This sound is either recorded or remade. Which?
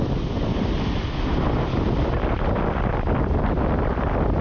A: recorded